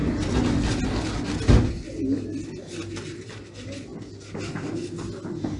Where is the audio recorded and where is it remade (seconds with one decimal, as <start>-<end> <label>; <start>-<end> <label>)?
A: 0.0-5.6 recorded